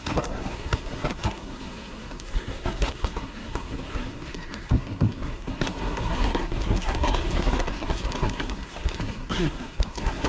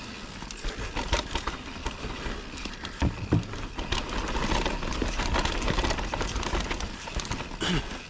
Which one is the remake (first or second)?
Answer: first